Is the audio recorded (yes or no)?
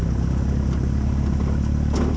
yes